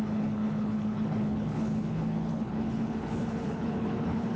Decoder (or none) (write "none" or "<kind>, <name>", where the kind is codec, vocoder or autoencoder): codec, HILCodec